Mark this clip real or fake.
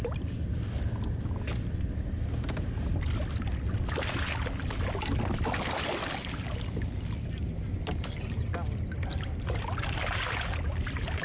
real